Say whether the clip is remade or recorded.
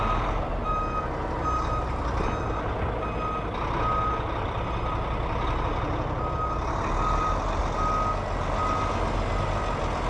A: recorded